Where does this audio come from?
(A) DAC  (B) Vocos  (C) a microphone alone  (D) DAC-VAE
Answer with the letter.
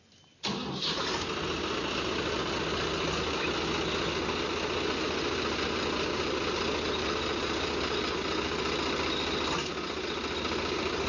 C